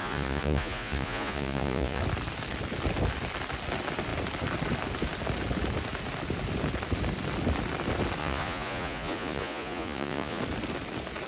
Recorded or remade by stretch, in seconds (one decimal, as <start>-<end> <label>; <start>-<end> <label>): 0.0-2.0 remade; 2.0-8.2 recorded; 8.2-10.4 remade; 10.4-11.3 recorded